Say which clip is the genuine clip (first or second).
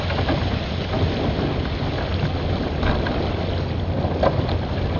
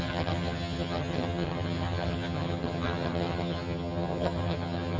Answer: first